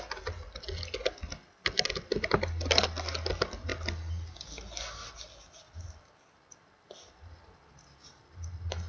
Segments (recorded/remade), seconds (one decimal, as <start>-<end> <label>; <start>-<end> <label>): 0.0-8.9 recorded